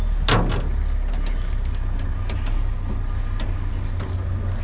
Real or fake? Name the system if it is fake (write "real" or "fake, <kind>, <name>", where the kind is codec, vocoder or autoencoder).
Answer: real